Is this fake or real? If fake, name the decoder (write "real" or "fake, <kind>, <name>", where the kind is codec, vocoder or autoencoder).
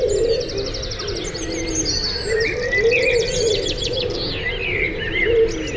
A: real